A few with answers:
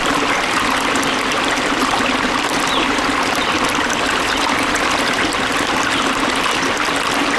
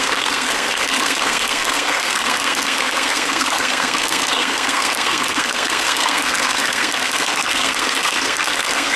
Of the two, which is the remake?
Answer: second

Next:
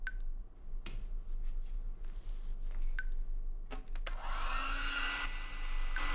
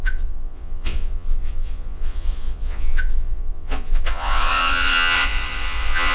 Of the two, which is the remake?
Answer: second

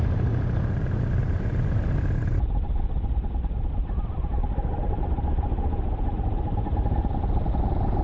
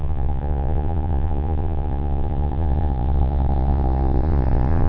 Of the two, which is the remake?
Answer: second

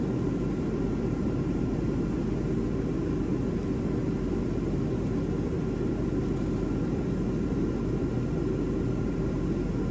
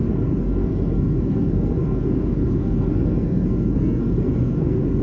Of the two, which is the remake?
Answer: second